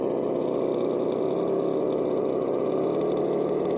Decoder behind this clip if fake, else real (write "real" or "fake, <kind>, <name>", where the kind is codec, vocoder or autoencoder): real